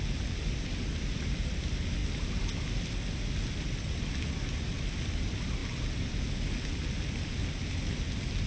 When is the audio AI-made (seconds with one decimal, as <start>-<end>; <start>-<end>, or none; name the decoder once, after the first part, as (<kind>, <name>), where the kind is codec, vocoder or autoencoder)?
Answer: none